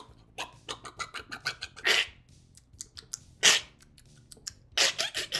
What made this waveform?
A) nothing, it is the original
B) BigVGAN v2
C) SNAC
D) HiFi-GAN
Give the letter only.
A